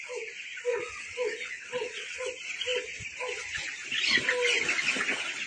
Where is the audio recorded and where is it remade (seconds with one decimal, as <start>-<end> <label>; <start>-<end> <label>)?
0.0-0.7 recorded; 0.7-2.2 remade; 2.2-5.5 recorded